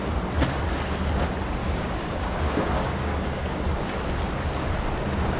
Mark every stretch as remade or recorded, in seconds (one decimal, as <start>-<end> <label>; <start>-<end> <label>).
0.0-1.6 recorded; 1.6-3.6 remade; 3.6-5.4 recorded